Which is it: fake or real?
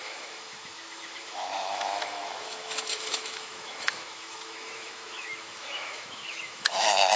fake